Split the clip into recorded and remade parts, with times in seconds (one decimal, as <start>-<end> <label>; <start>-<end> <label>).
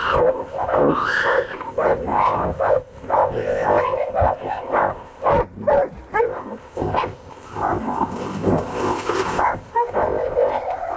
0.0-5.3 remade; 5.3-6.2 recorded; 6.2-11.0 remade